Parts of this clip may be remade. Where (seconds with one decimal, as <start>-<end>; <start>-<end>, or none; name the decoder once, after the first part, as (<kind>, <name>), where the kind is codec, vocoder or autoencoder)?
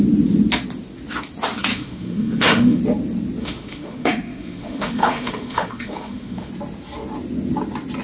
1.7-2.8 (autoencoder, DAC-VAE); 3.4-6.5